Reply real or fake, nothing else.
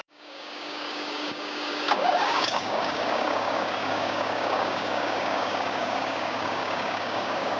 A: fake